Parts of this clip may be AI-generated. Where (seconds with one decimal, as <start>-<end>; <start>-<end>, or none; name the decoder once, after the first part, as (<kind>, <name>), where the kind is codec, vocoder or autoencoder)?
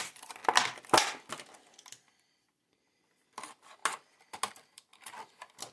0.0-0.4 (vocoder, BigVGAN v2); 2.1-3.8; 4.5-4.9